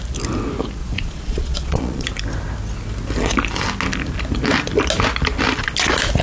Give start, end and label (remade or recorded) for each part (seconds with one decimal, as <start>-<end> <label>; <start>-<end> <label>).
0.0-0.8 recorded; 0.8-2.1 remade; 2.1-6.2 recorded